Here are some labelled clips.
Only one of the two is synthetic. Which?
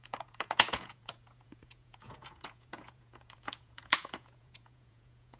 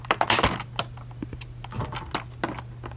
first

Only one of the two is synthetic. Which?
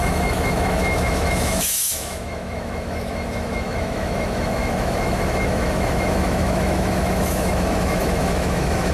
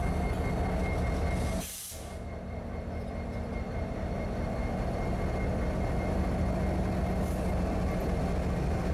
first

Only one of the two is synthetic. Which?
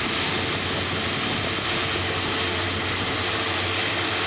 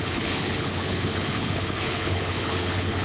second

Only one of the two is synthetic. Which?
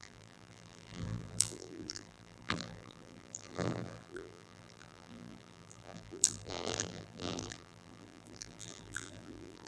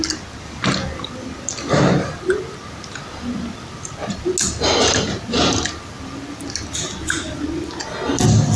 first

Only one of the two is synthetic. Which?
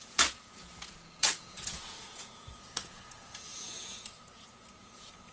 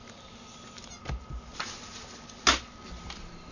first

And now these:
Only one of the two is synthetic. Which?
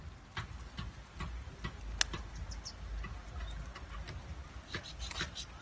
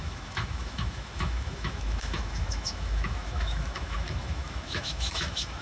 second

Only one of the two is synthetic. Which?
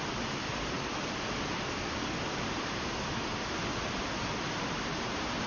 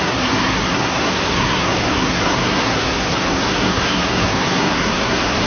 second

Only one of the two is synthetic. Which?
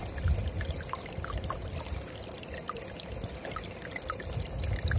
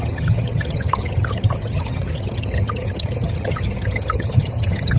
second